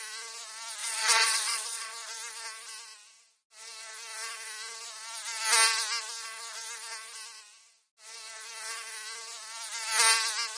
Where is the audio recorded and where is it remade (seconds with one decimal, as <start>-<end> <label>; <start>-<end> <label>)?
0.0-0.8 recorded; 0.8-1.9 remade; 1.9-10.6 recorded